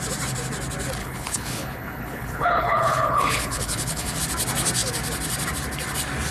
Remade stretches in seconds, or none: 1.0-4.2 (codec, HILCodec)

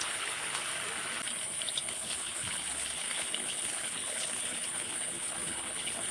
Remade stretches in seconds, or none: 0.0-0.7 (codec, HILCodec); 1.7-6.1

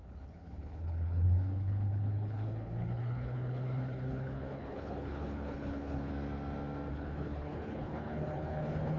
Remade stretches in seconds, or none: 0.0-6.1 (codec, HILCodec); 6.9-9.0

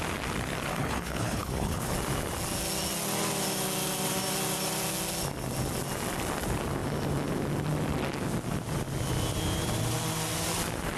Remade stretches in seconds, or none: 0.7-1.9 (codec, HILCodec)

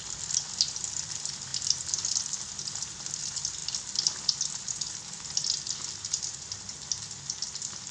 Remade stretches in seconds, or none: none

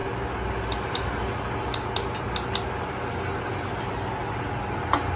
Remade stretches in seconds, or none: none

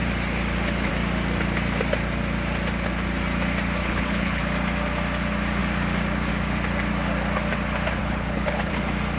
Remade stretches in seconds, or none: 3.8-4.4 (codec, HILCodec); 8.0-8.7